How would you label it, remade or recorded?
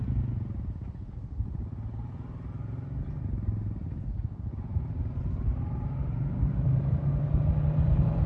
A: recorded